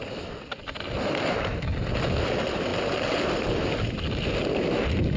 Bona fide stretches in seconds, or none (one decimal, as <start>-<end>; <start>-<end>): none